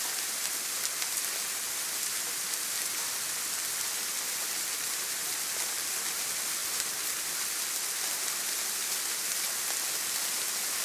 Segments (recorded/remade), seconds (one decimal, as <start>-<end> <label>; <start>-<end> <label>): 0.0-10.8 recorded